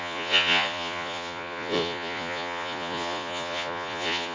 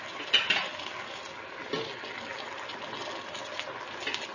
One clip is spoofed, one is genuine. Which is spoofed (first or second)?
first